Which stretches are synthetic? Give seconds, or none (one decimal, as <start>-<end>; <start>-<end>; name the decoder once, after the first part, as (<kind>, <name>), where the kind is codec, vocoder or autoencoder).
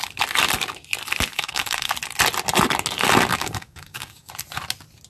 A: 1.3-1.9 (codec, DAC); 3.3-4.3